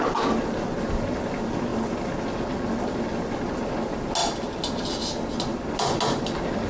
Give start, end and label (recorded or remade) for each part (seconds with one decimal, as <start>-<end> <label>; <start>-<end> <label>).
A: 0.0-6.7 recorded